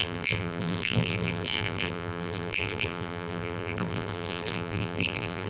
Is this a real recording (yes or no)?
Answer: no